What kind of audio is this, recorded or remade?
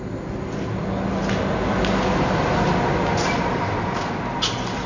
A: recorded